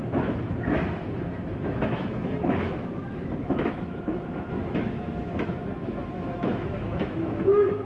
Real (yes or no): no